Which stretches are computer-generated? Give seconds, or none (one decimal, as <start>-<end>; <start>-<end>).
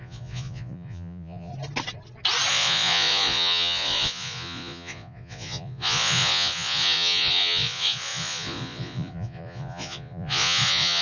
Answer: 0.0-1.5; 2.5-11.0